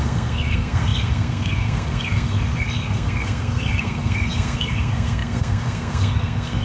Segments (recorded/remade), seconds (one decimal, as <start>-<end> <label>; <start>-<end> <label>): 0.0-6.6 remade